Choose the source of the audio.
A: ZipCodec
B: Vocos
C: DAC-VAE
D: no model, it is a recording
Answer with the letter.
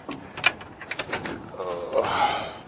D